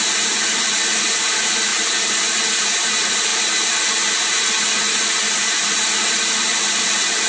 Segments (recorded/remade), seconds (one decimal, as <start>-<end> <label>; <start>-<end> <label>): 0.0-7.3 recorded